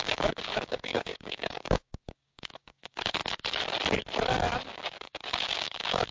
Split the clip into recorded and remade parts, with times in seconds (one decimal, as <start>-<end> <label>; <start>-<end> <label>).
0.0-3.2 remade; 3.2-4.7 recorded; 4.7-6.1 remade